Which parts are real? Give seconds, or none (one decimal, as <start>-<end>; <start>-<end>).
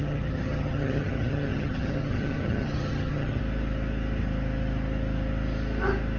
3.4-6.2